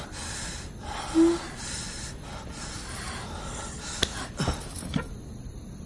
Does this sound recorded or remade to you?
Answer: recorded